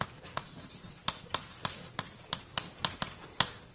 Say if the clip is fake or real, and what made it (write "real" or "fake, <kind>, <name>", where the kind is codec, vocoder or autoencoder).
real